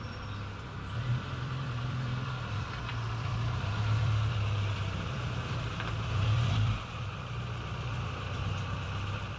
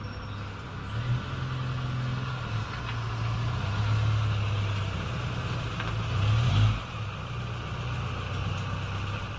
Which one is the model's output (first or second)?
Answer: first